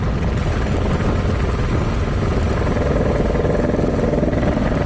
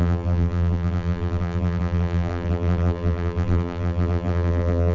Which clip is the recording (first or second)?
first